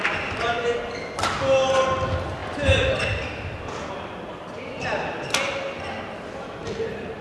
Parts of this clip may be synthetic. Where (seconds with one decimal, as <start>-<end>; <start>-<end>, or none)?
none